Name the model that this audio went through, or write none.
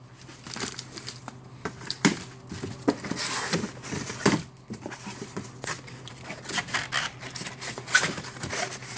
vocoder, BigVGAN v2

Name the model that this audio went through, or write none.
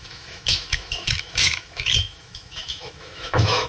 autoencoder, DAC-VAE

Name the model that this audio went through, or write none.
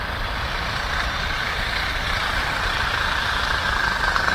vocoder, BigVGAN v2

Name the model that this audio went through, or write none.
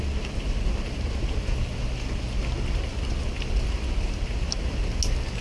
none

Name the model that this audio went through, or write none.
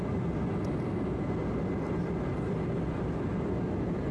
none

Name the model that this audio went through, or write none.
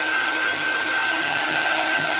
vocoder, HiFi-GAN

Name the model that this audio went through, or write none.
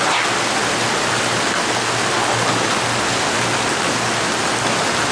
none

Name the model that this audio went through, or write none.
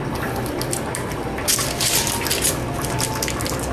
none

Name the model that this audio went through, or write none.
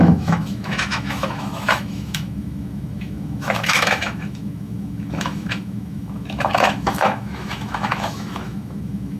autoencoder, DAC-VAE